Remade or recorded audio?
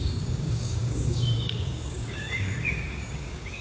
remade